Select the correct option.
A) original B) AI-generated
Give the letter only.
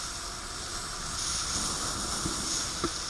A